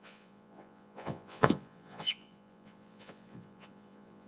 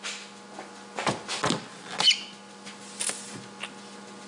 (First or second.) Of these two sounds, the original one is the second